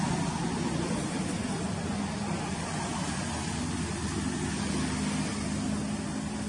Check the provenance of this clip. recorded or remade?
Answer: recorded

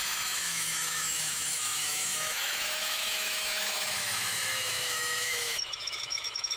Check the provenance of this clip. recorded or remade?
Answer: remade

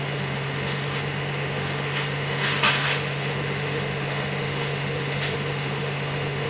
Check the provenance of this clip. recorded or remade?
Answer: remade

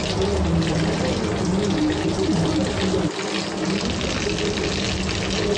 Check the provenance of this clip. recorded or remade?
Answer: recorded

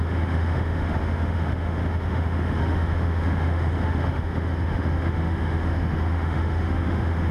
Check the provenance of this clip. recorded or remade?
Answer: remade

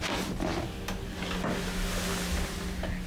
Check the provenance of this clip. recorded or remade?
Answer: recorded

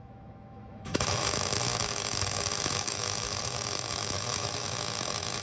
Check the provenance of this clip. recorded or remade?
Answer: remade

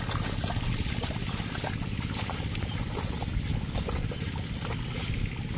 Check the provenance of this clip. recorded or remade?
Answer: recorded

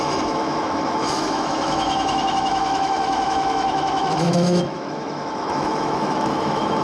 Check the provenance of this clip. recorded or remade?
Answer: remade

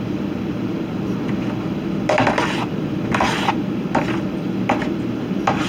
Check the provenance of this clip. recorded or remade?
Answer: recorded